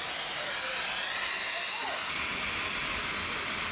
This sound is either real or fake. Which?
real